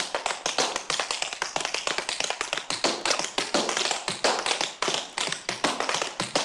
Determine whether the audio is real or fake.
real